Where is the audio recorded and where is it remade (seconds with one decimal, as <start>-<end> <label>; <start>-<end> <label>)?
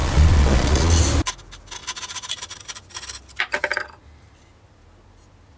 0.0-1.0 remade; 1.0-5.6 recorded